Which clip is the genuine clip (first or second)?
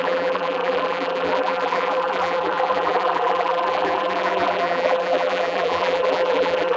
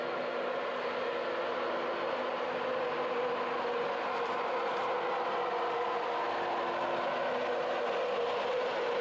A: second